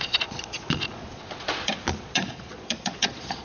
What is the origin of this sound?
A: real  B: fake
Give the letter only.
B